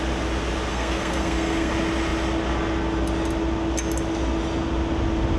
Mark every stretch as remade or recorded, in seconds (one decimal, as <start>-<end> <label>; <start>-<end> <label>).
0.0-0.7 recorded; 0.7-1.7 remade; 1.7-5.4 recorded